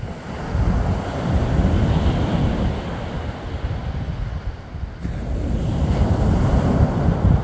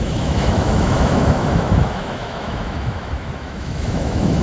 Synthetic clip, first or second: second